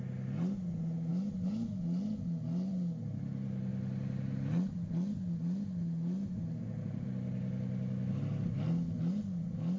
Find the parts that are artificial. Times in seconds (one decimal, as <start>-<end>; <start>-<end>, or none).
none